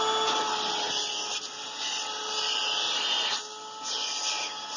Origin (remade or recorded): recorded